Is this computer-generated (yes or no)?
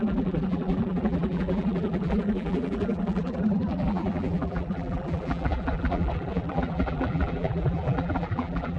yes